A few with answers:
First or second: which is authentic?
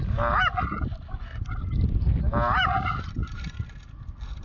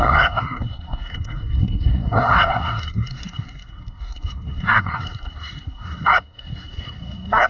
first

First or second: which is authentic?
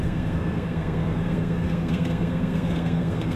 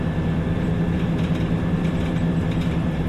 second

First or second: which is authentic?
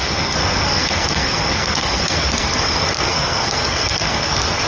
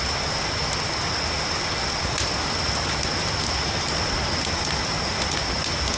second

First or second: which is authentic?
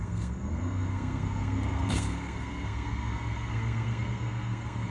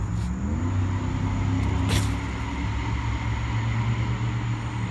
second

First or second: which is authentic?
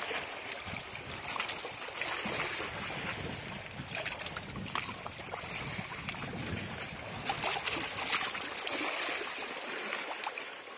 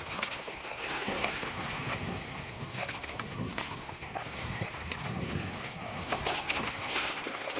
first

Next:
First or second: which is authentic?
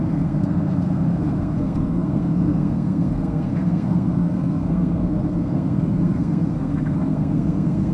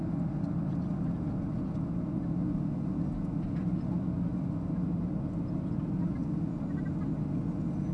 second